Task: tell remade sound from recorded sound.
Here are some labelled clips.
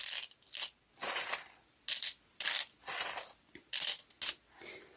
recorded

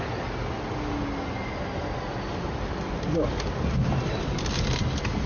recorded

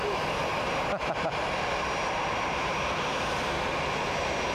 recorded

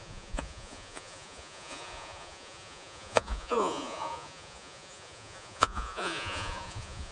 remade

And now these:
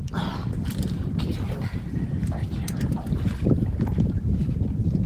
recorded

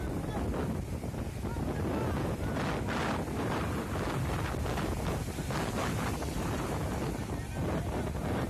recorded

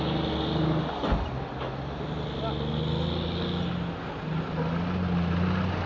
recorded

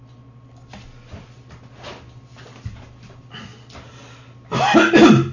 recorded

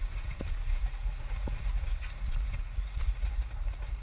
remade